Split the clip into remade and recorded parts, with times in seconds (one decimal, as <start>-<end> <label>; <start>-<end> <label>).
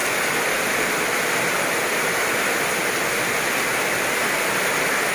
0.0-0.9 remade; 0.9-1.9 recorded; 1.9-3.1 remade; 3.1-5.1 recorded